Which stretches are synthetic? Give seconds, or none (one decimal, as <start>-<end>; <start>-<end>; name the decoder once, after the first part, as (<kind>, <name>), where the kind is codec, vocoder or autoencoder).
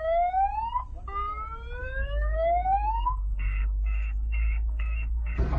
1.8-5.6 (codec, SNAC)